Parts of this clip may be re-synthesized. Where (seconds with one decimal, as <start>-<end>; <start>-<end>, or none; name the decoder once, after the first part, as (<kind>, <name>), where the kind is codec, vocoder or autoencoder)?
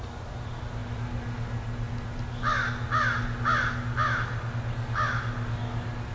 none